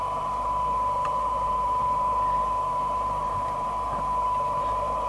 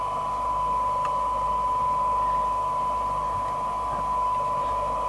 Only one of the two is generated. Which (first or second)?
first